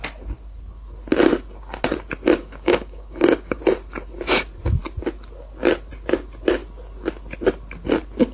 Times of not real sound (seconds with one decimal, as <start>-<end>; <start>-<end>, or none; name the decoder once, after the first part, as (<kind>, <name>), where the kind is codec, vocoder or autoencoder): 2.4-3.6 (codec, DAC)